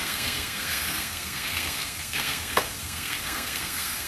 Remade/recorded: remade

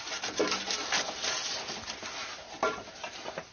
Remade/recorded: recorded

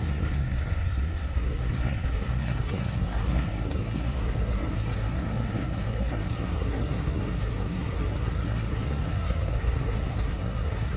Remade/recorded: remade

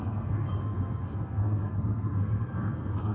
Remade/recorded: remade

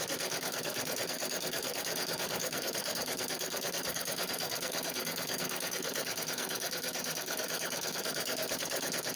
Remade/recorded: remade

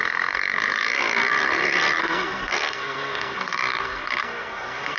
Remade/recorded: remade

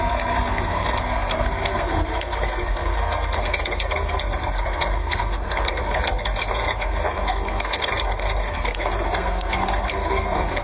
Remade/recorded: remade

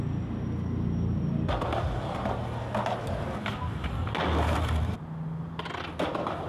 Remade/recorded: recorded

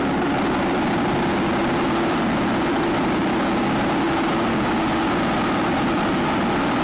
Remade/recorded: recorded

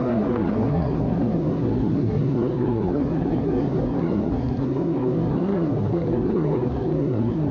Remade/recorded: remade